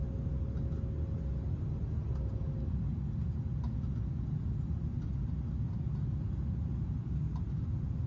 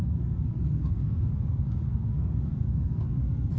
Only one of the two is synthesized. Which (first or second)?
second